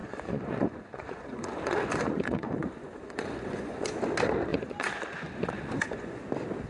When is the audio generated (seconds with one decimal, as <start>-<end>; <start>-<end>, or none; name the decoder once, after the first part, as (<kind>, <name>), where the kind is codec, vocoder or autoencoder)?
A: 0.0-4.0 (vocoder, Vocos); 4.5-6.2